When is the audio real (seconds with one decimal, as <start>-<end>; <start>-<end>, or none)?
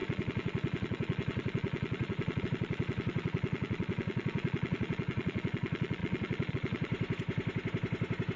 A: 6.9-8.4